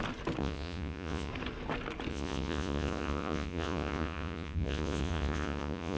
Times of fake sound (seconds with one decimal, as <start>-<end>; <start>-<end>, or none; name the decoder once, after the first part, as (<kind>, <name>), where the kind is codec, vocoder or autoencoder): 0.4-1.3 (vocoder, Vocos); 2.1-6.0